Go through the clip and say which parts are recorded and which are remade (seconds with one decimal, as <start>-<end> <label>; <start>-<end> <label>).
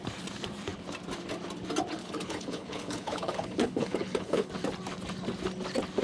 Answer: 0.0-2.0 recorded; 2.0-4.5 remade; 4.5-6.0 recorded